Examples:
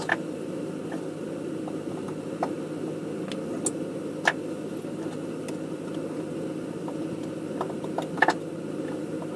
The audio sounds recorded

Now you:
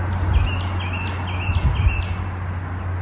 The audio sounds recorded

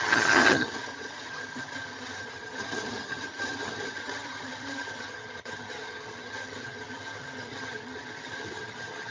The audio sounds remade